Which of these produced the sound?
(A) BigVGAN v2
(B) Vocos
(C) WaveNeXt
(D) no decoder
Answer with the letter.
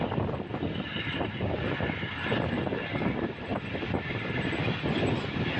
D